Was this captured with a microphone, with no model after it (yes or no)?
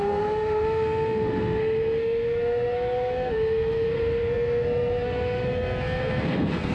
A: no